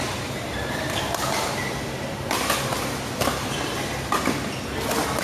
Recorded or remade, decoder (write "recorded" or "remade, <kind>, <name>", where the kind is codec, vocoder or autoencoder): recorded